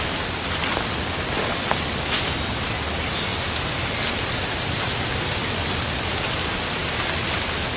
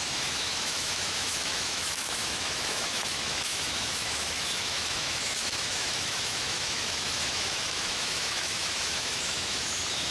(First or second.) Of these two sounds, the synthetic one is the second